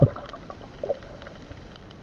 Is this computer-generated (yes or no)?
no